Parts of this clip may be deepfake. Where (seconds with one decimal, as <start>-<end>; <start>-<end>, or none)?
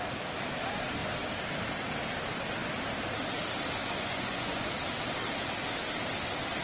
3.8-4.7